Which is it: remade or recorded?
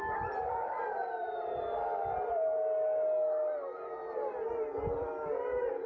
recorded